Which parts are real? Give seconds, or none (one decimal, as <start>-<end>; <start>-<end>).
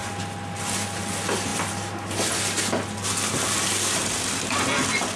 0.0-1.5; 4.6-5.2